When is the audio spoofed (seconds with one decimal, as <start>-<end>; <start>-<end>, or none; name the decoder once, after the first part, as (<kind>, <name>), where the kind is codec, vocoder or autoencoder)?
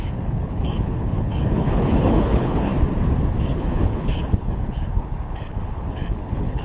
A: 0.0-2.7 (codec, HILCodec); 3.4-6.6